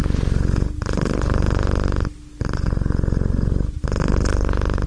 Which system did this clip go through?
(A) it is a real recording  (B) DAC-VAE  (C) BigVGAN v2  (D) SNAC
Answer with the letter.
A